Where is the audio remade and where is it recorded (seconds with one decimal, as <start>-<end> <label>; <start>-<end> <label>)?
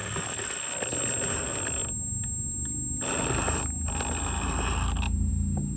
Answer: 0.0-5.8 recorded